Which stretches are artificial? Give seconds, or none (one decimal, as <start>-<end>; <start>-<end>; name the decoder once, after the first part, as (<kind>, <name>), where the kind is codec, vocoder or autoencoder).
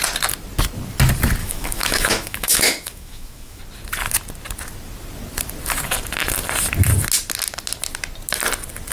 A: 1.4-3.6 (autoencoder, DAC-VAE)